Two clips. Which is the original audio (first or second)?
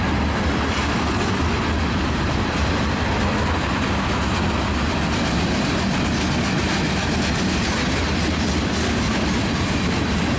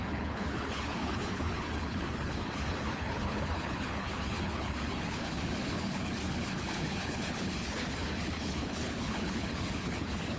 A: first